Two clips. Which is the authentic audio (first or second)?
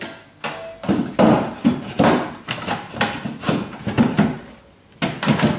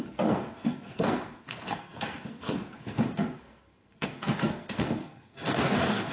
first